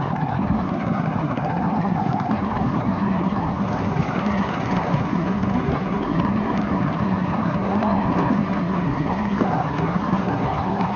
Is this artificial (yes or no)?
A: yes